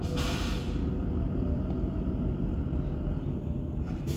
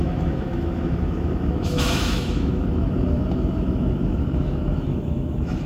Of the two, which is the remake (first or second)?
second